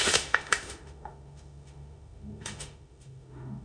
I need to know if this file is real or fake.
fake